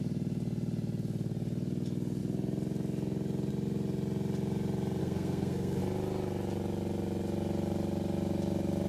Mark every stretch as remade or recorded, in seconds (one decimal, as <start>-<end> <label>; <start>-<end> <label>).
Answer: 0.0-5.0 recorded; 5.0-5.8 remade; 5.8-8.9 recorded